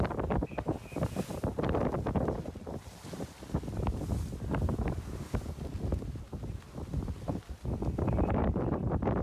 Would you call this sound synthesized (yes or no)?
yes